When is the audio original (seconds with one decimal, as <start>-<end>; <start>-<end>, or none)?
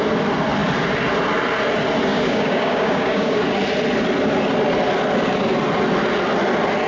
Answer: 0.0-2.1; 3.4-6.9